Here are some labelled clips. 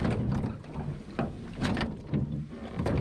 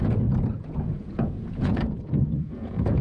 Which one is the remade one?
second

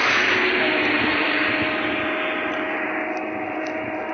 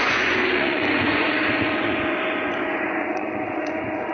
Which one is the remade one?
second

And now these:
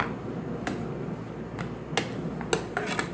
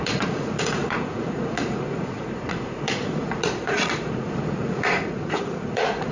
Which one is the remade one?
second